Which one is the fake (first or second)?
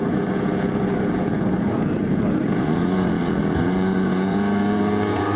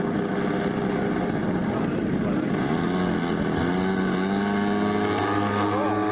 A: first